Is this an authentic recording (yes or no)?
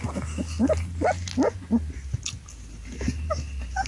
yes